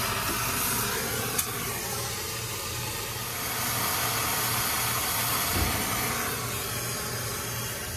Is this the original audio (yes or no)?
yes